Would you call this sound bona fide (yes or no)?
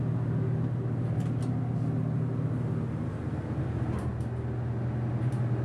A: yes